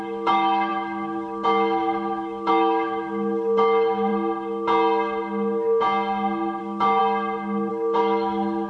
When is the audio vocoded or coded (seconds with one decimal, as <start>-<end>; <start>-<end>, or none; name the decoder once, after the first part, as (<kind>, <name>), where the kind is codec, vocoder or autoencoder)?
0.0-4.1 (autoencoder, DAC-VAE); 6.6-7.0; 7.7-8.7